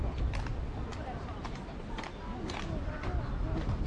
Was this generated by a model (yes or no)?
no